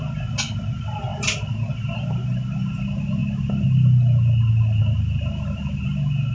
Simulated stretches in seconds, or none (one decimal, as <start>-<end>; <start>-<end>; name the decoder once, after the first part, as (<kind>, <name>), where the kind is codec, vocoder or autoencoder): none